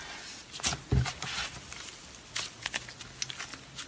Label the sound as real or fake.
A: real